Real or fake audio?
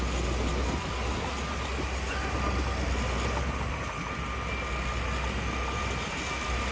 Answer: real